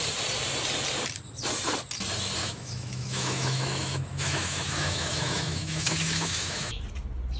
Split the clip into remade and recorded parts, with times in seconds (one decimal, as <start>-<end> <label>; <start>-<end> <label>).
0.0-2.4 recorded; 2.4-6.8 remade; 6.8-7.4 recorded